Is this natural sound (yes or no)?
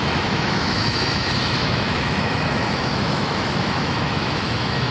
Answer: no